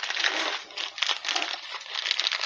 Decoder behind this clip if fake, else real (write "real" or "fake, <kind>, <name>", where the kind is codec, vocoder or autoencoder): real